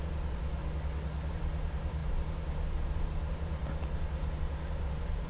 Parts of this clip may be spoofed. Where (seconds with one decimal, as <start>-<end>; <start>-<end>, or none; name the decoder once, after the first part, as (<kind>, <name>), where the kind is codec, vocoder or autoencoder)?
0.0-0.6 (vocoder, BigVGAN v2); 1.3-3.6; 4.4-5.3

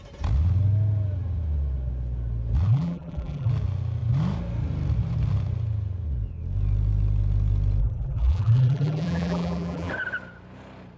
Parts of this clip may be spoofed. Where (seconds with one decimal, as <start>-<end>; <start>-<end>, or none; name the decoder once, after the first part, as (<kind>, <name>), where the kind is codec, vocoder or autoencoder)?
2.7-3.5 (vocoder, BigVGAN v2); 7.8-9.9

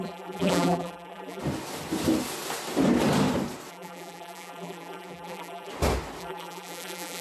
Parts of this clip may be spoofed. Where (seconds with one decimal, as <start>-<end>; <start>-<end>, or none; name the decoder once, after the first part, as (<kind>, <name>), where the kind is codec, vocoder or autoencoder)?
0.0-1.4 (vocoder, BigVGAN v2); 3.7-5.7; 6.2-7.2

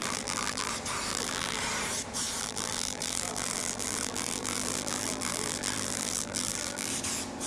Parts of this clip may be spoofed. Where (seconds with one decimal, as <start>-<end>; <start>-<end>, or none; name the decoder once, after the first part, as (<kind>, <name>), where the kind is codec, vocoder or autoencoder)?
0.0-0.7 (vocoder, BigVGAN v2); 1.1-1.6; 2.4-6.9

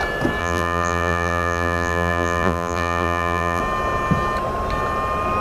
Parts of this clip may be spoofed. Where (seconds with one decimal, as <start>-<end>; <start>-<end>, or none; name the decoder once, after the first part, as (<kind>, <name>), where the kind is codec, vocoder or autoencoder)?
0.4-3.6 (vocoder, BigVGAN v2)